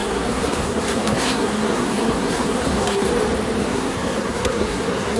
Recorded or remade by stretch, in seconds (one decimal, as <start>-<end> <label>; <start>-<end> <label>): 0.0-3.1 remade; 3.1-3.6 recorded; 3.6-5.2 remade